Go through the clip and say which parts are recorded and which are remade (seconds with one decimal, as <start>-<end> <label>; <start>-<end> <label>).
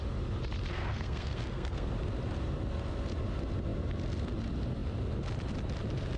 0.0-0.7 recorded; 0.7-1.9 remade; 1.9-6.2 recorded